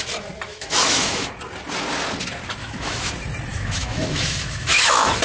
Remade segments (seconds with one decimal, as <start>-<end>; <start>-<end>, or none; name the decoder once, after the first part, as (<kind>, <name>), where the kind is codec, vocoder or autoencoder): 0.5-1.3 (autoencoder, DAC-VAE); 2.6-3.1; 3.5-5.2